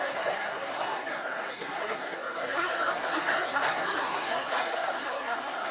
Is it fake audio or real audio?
fake